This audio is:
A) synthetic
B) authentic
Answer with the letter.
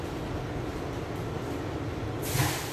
B